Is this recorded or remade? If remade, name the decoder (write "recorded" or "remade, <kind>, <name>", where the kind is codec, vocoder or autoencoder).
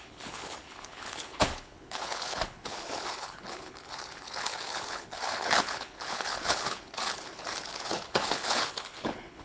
remade, codec, HILCodec